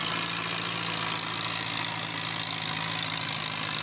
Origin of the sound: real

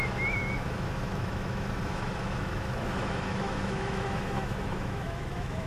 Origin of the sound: fake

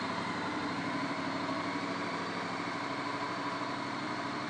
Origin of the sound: fake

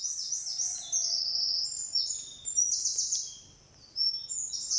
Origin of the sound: real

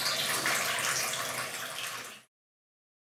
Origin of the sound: real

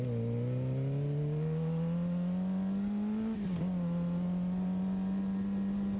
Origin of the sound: real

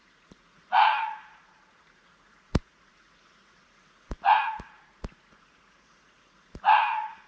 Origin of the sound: fake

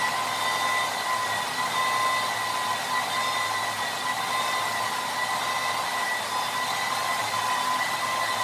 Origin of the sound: real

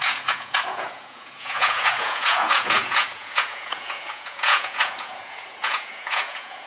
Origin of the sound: fake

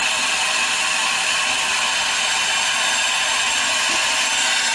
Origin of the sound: real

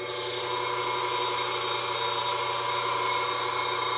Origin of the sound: real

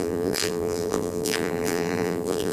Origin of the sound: fake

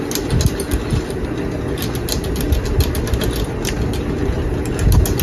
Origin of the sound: real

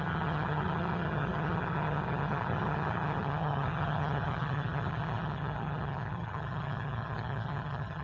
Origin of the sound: fake